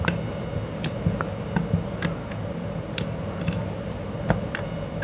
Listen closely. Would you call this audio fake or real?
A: real